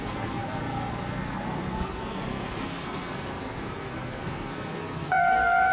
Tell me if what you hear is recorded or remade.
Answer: remade